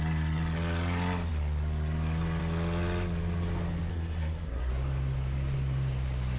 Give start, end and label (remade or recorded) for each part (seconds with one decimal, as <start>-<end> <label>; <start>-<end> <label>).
0.0-3.9 recorded; 3.9-4.7 remade; 4.7-6.4 recorded